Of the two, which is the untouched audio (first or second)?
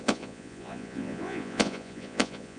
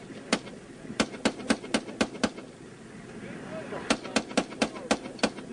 second